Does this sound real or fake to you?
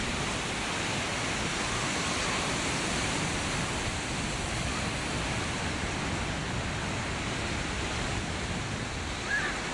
real